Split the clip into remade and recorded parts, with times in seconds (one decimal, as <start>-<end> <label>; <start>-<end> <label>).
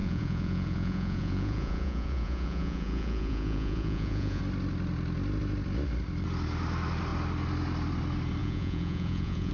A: 0.0-4.4 remade; 4.4-8.4 recorded; 8.4-9.5 remade